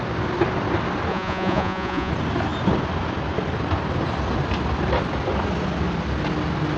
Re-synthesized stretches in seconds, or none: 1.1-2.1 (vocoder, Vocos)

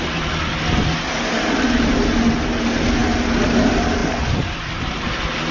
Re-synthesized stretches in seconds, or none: none

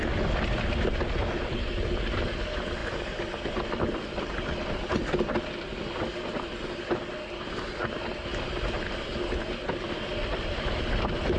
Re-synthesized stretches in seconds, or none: none

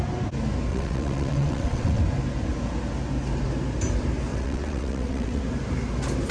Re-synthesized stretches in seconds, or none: 0.7-2.0 (vocoder, WaveNeXt); 4.3-5.4

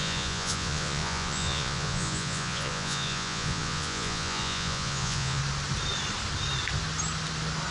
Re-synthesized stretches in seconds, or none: 0.0-5.4 (vocoder, Vocos)

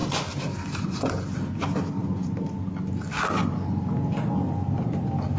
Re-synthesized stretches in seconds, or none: none